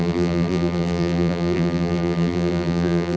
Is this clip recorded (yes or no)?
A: no